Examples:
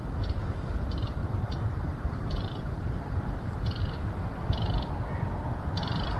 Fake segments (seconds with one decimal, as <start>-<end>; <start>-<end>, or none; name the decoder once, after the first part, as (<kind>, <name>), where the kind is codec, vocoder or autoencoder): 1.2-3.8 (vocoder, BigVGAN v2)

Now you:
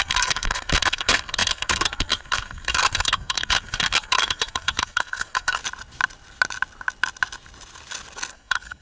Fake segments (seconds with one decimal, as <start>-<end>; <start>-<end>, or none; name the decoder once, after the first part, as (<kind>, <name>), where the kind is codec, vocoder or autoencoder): 0.0-5.6 (codec, SNAC); 8.3-8.8

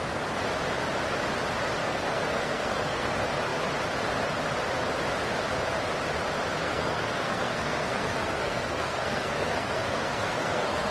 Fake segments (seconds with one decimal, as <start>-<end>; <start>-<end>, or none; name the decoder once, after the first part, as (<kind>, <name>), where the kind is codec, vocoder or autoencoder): 1.8-3.1 (codec, SNAC); 6.6-10.9

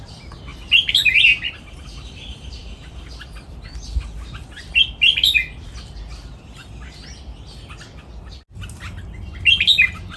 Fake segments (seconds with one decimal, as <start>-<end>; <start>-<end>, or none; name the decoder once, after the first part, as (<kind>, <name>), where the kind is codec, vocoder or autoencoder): 2.6-4.7 (vocoder, BigVGAN v2)

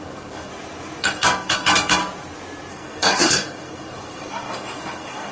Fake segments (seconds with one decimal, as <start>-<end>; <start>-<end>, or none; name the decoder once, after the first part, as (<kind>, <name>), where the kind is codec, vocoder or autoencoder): 0.0-0.5 (codec, SNAC); 1.0-2.0; 2.7-5.3

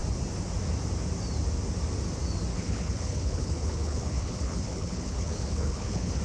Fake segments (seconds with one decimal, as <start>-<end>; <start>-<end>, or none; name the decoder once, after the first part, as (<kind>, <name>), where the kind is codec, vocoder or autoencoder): 2.5-6.2 (codec, HILCodec)